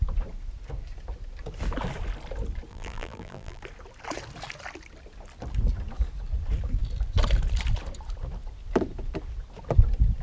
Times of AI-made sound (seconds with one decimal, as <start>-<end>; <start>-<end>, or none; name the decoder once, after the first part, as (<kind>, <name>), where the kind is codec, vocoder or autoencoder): 2.7-3.6 (vocoder, BigVGAN v2)